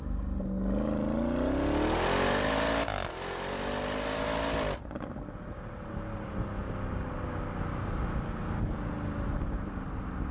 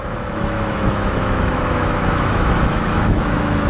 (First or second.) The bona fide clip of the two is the first